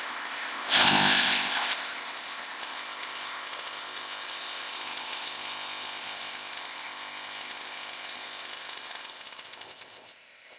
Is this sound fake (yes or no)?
yes